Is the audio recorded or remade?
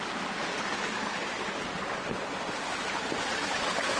remade